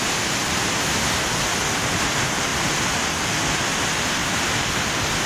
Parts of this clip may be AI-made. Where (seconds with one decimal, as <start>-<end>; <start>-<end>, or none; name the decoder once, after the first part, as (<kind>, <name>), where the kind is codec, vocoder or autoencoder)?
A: none